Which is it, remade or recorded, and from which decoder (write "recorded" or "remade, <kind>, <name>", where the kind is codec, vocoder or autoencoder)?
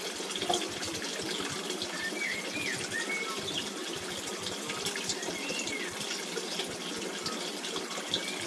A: recorded